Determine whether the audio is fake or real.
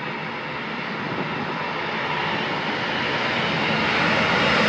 real